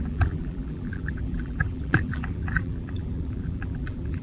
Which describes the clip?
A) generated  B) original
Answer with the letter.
A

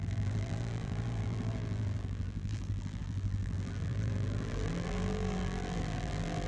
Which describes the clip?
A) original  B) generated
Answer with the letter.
B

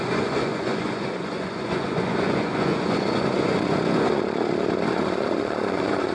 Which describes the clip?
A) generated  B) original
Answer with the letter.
A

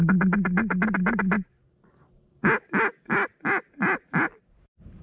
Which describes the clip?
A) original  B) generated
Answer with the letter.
A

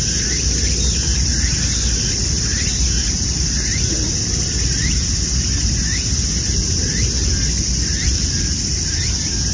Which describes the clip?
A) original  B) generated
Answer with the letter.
A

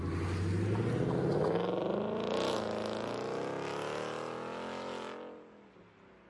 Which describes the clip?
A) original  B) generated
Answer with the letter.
A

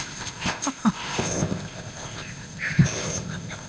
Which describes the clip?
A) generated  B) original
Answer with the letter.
A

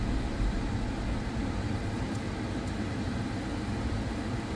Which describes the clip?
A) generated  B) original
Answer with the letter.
B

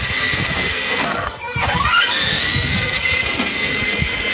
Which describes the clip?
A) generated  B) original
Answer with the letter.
A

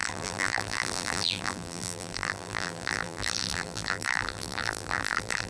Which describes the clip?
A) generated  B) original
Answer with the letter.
A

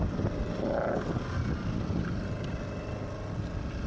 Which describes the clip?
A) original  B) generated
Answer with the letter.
A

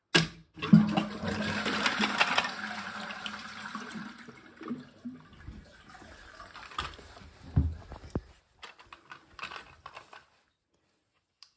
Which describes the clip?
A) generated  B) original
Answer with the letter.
B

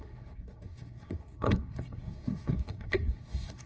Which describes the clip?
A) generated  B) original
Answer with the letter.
A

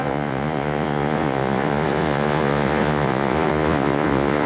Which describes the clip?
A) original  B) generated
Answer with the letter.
B